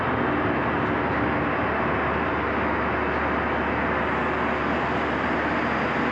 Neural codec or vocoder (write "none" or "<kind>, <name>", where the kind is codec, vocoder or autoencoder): none